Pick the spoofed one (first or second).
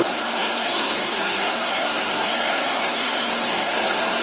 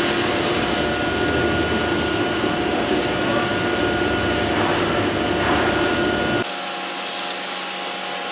first